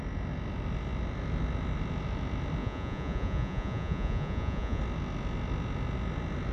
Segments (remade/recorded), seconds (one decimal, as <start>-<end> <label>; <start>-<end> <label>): 0.0-2.6 recorded; 2.6-4.8 remade; 4.8-6.5 recorded